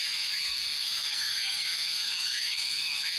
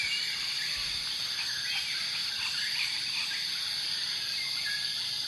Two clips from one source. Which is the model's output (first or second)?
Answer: first